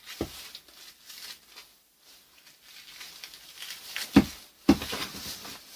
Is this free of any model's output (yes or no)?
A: yes